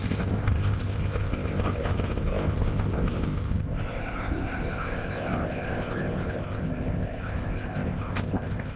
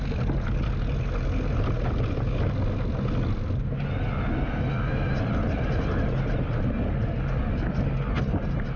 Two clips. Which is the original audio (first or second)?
second